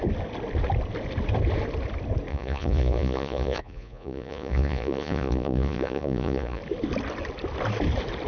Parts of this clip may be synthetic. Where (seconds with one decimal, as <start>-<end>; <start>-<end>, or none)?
2.3-6.6

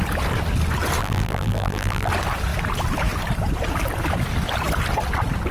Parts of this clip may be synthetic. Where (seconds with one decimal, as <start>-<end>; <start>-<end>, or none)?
1.0-2.1

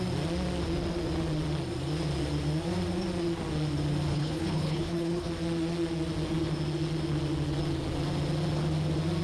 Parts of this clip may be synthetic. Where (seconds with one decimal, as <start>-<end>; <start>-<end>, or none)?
4.1-5.3

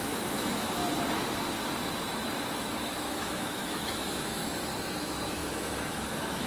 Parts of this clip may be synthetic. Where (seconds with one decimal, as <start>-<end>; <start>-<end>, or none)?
0.0-0.8; 2.9-4.4; 5.0-6.5